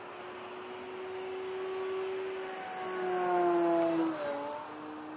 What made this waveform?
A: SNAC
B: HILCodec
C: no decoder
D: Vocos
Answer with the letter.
C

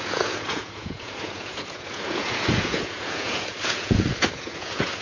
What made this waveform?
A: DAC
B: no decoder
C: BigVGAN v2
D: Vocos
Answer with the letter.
D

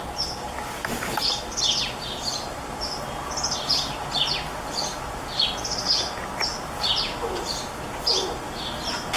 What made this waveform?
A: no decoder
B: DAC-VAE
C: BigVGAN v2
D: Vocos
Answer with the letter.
A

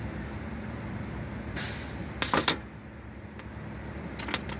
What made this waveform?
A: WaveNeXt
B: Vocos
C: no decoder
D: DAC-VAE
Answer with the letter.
C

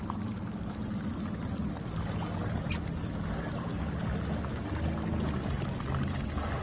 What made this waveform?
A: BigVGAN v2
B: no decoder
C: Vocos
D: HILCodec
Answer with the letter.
B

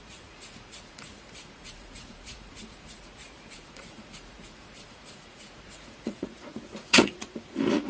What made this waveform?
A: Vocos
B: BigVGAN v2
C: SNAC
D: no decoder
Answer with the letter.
A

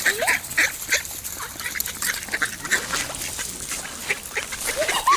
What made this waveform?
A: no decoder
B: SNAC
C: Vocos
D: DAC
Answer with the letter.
A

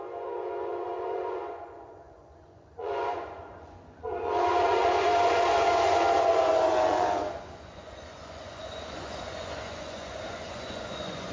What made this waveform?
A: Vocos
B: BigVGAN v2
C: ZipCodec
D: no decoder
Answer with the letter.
A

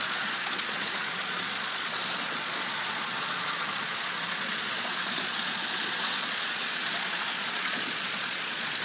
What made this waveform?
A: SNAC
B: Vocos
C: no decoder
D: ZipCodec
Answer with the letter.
B